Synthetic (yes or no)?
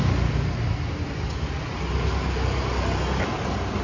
no